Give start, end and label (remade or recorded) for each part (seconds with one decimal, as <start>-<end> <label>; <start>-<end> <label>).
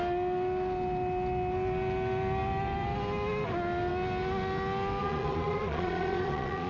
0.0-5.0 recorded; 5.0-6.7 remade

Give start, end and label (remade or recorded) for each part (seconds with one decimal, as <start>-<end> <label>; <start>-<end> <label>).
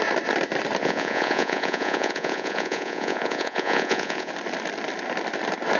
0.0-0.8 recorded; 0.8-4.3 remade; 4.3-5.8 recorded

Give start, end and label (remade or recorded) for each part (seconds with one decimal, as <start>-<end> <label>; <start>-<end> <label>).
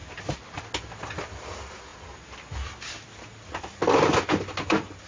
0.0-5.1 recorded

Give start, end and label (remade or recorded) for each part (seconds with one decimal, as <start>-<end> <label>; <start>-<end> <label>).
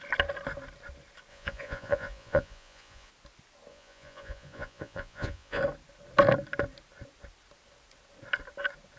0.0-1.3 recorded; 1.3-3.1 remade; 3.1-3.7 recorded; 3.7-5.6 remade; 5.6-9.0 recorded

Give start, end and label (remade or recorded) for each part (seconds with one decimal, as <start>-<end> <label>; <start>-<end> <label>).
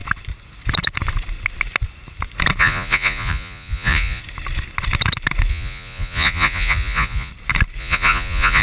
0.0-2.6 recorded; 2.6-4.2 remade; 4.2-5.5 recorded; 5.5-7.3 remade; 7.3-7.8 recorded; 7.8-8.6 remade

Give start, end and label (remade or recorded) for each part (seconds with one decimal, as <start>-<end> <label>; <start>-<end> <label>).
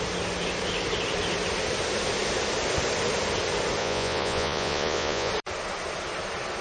0.0-3.8 recorded; 3.8-5.3 remade; 5.3-6.6 recorded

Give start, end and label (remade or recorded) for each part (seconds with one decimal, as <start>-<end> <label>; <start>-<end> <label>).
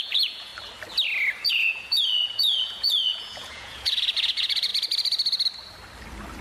0.0-0.5 remade; 0.5-1.5 recorded; 1.5-4.7 remade; 4.7-6.4 recorded